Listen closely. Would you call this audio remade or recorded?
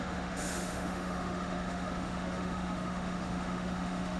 remade